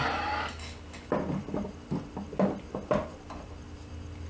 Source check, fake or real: real